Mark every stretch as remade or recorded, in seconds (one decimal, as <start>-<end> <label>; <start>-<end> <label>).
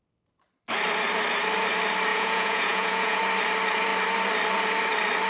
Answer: 0.0-2.1 recorded; 2.1-3.2 remade; 3.2-5.3 recorded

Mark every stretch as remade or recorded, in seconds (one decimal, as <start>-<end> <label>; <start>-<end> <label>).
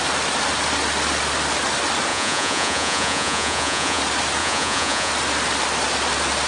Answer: 0.0-2.1 recorded; 2.1-4.0 remade; 4.0-4.4 recorded; 4.4-5.1 remade; 5.1-6.5 recorded